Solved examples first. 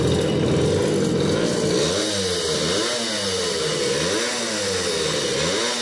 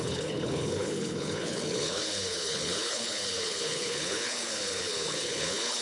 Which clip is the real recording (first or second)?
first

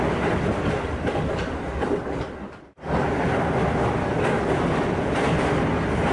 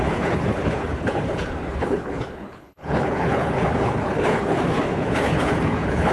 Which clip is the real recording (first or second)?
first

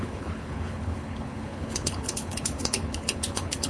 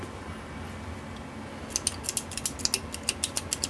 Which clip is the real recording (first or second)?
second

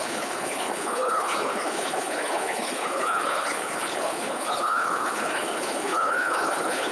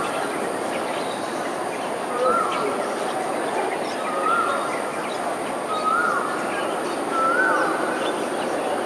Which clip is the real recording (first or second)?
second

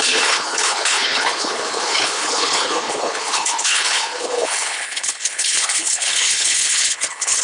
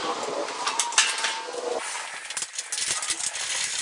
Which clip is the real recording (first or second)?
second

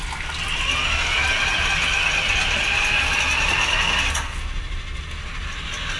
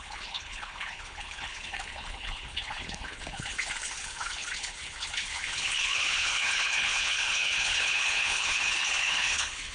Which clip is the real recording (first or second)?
first